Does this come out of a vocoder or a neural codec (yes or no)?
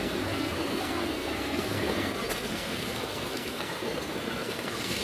yes